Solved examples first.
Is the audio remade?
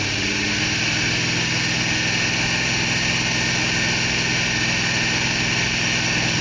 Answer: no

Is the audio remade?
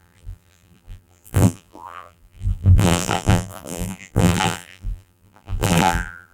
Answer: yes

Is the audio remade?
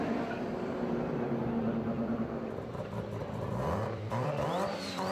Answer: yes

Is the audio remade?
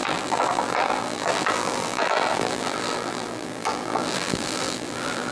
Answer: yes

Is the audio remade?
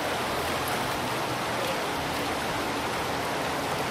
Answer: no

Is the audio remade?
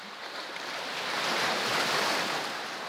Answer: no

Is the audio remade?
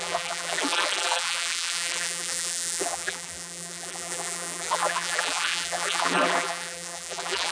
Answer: yes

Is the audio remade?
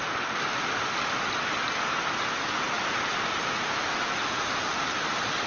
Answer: no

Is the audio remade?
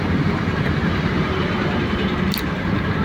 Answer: yes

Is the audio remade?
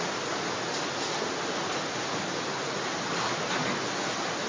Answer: no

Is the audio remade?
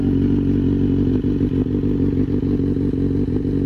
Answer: no